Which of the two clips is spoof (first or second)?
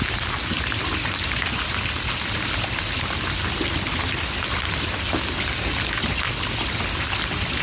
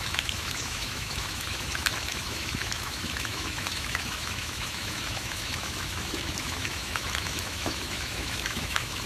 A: second